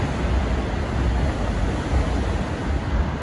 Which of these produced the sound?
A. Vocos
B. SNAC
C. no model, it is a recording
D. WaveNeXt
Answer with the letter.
C